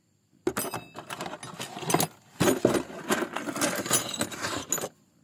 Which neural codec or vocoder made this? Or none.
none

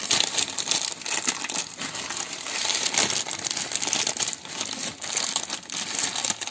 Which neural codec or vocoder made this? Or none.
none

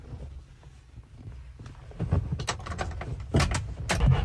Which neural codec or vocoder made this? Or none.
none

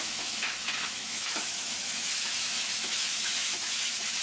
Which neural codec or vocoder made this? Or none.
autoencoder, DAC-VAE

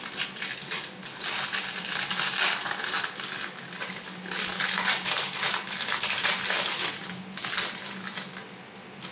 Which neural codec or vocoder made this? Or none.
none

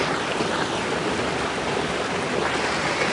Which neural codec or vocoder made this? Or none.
none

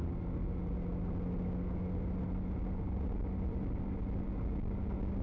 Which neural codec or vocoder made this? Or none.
none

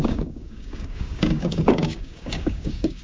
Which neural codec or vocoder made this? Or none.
codec, DAC